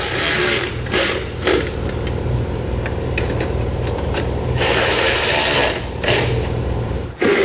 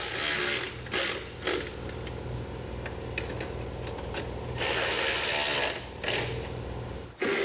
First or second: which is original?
second